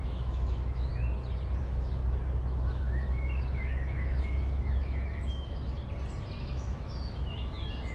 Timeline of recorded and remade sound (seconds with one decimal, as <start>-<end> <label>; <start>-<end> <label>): 0.0-0.9 remade; 0.9-1.6 recorded; 1.6-2.0 remade; 2.0-2.6 recorded; 2.6-5.8 remade; 5.8-6.4 recorded; 6.4-7.9 remade

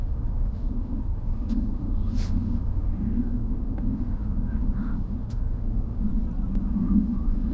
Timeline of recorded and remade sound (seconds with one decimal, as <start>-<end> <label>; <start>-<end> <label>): 0.0-6.1 remade; 6.1-6.6 recorded; 6.6-7.5 remade

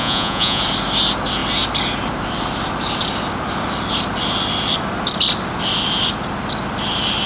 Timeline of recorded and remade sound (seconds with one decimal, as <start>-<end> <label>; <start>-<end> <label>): 0.0-0.6 remade; 0.6-7.3 recorded

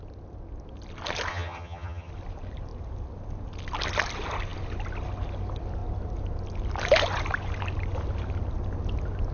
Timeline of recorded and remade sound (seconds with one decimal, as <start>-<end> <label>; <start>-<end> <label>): 0.0-1.3 recorded; 1.3-2.1 remade; 2.1-9.3 recorded

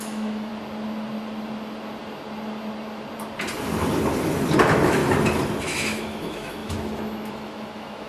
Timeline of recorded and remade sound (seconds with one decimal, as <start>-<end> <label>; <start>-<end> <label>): 0.0-0.5 remade; 0.5-4.6 recorded; 4.6-5.0 remade; 5.0-5.6 recorded; 5.6-8.1 remade

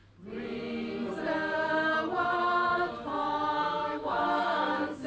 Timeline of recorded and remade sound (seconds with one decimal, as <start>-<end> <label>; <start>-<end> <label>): 0.0-3.2 recorded; 3.2-5.1 remade